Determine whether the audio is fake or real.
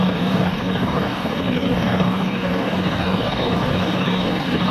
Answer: fake